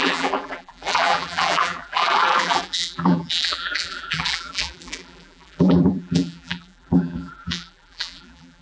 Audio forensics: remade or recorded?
remade